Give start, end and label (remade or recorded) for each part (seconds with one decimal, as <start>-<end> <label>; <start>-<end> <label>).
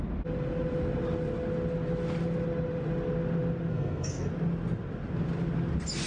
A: 0.0-3.7 recorded; 3.7-4.3 remade; 4.3-6.1 recorded